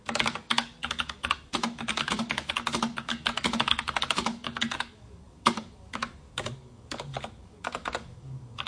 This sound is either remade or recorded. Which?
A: remade